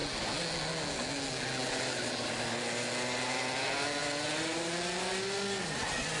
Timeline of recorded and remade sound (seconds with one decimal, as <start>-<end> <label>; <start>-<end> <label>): 0.0-6.2 recorded